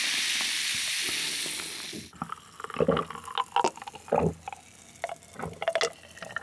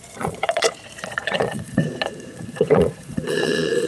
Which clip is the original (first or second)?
first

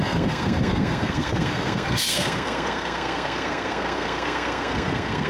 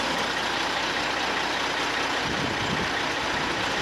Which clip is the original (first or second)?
second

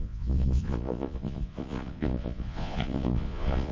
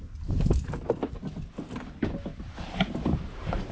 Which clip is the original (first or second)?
second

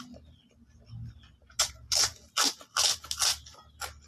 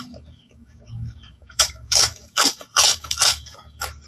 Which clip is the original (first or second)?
first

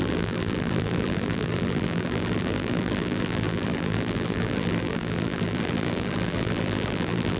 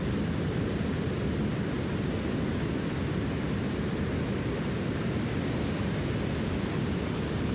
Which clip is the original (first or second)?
second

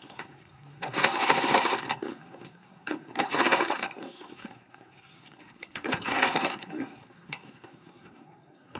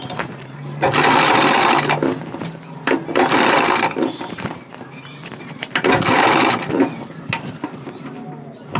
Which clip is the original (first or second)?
second